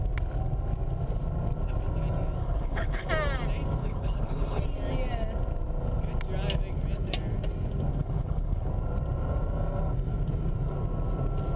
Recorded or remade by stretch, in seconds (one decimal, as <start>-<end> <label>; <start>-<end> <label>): 0.0-2.4 recorded; 2.4-3.1 remade; 3.1-3.8 recorded; 3.8-4.6 remade; 4.6-7.9 recorded; 7.9-8.7 remade; 8.7-11.6 recorded

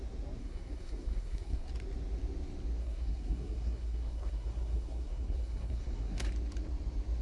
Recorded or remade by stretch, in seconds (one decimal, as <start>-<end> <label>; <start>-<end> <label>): 0.0-0.4 recorded; 0.4-1.7 remade; 1.7-2.8 recorded; 2.8-6.3 remade; 6.3-7.2 recorded

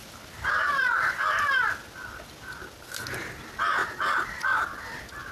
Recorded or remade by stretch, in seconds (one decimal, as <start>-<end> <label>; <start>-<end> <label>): 0.0-2.3 remade; 2.3-3.8 recorded; 3.8-4.4 remade; 4.4-5.3 recorded